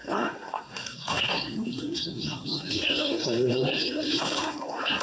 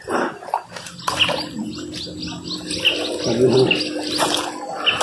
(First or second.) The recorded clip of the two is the second